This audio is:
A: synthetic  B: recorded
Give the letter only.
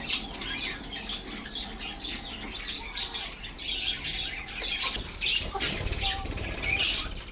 B